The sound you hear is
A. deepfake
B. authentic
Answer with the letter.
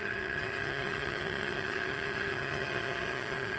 A